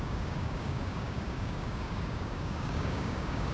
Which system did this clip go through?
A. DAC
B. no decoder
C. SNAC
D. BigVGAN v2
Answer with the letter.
A